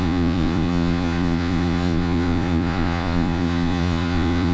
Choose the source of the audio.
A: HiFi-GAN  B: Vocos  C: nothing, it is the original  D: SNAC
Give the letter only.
B